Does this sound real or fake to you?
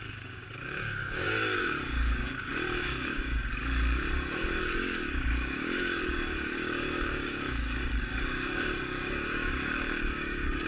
fake